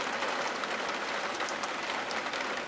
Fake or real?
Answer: real